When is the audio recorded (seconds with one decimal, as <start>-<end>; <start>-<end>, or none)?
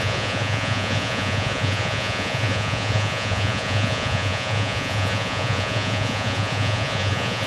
none